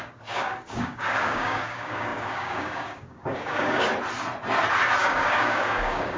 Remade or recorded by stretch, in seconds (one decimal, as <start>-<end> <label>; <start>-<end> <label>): 0.0-3.9 remade; 3.9-5.0 recorded; 5.0-6.2 remade